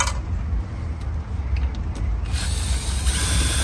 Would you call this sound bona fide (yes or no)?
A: yes